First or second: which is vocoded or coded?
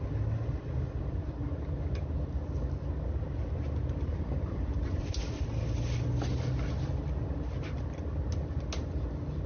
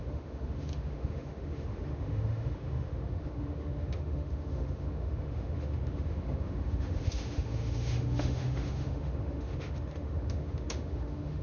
second